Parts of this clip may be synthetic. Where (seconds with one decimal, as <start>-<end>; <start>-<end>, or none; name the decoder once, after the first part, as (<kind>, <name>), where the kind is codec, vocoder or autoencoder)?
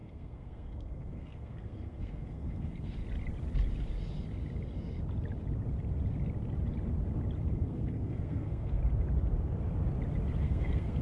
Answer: 0.0-3.0 (codec, SNAC); 7.5-8.8; 10.4-11.0